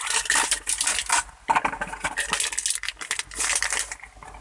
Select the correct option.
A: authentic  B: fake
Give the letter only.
A